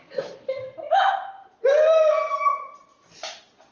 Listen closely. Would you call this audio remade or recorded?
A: recorded